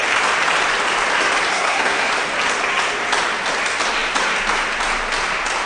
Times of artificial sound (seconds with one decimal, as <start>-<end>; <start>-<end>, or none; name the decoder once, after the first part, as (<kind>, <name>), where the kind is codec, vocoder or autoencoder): 1.5-2.1 (codec, SNAC)